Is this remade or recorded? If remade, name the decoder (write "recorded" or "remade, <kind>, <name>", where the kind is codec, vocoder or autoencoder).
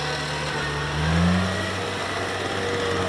recorded